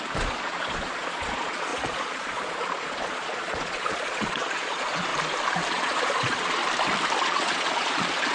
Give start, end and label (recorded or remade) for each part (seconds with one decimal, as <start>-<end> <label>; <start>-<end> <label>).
0.0-5.1 remade; 5.1-5.7 recorded; 5.7-6.6 remade; 6.6-7.2 recorded; 7.2-8.3 remade